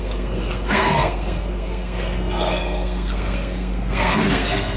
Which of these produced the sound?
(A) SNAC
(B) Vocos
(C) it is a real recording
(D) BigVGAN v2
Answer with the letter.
A